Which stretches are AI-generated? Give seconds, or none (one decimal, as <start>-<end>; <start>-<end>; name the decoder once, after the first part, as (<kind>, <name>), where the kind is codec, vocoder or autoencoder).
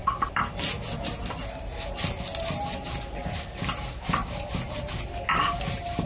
none